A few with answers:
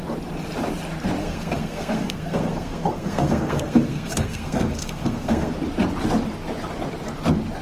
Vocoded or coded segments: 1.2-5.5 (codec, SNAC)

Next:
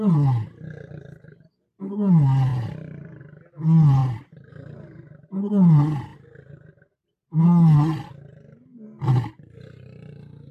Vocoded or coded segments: 2.5-3.2 (vocoder, BigVGAN v2)

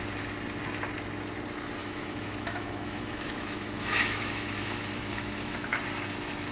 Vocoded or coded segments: 1.8-5.7 (autoencoder, DAC-VAE)

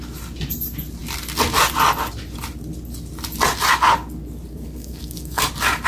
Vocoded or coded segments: 4.5-5.4 (codec, SNAC)

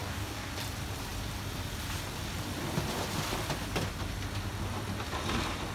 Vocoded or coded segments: 0.0-0.5 (codec, DAC)

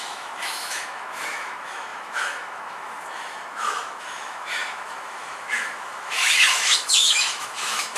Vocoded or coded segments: 0.0-8.0 (autoencoder, DAC-VAE)